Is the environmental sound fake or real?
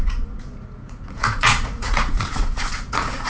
fake